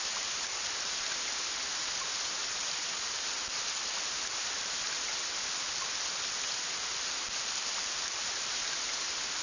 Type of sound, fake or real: real